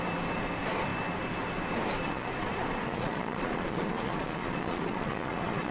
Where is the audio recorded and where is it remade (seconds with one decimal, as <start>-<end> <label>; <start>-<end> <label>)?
0.0-2.0 recorded; 2.0-5.7 remade